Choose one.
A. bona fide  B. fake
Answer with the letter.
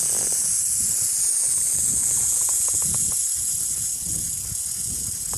B